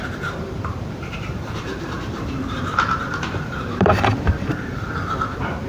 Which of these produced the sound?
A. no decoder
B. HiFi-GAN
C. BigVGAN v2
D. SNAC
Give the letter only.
C